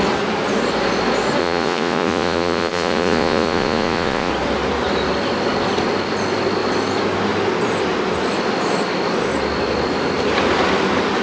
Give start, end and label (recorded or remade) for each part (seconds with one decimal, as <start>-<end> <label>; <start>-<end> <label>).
0.0-1.4 recorded; 1.4-4.3 remade; 4.3-11.2 recorded